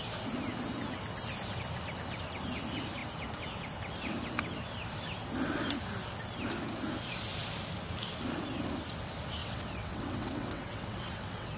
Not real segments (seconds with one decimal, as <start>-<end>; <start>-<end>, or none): 9.4-11.6